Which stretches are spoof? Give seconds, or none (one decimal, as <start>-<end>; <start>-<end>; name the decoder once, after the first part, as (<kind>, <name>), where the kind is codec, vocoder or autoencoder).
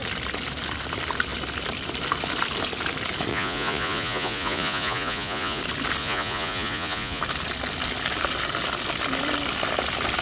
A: 3.3-5.6 (vocoder, Vocos); 6.0-7.2